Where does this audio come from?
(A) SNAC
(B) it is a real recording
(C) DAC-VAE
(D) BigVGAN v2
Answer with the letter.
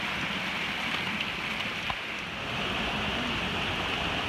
B